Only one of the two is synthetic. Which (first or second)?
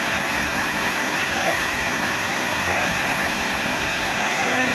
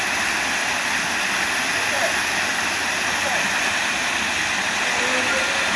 first